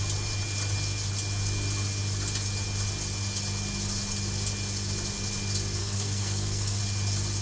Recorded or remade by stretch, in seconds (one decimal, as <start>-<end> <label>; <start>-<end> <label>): 0.0-5.8 recorded; 5.8-6.8 remade; 6.8-7.4 recorded